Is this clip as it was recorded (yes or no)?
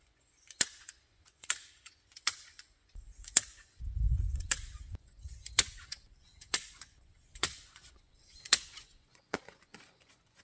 no